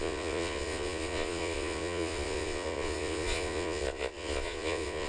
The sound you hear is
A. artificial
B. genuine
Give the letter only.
A